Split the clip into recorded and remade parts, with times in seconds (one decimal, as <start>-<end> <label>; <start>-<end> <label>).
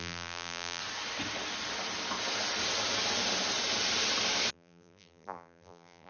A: 0.0-0.8 remade; 0.8-4.5 recorded; 4.5-6.1 remade